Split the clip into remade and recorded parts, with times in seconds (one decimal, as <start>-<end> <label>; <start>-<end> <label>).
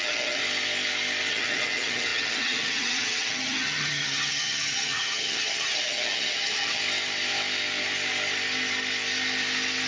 0.0-0.4 remade; 0.4-1.3 recorded; 1.3-6.8 remade; 6.8-9.9 recorded